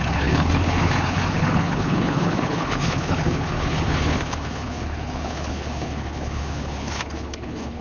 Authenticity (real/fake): fake